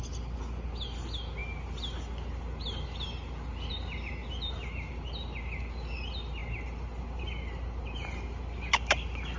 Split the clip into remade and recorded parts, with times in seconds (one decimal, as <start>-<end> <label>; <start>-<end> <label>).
0.0-9.4 recorded